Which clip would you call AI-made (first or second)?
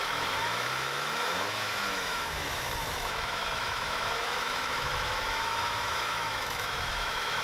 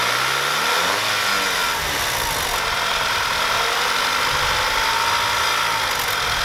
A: first